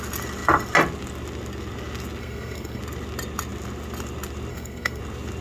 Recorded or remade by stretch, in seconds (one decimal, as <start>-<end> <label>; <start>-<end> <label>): 0.0-2.2 recorded; 2.2-2.8 remade; 2.8-4.5 recorded; 4.5-5.0 remade; 5.0-5.4 recorded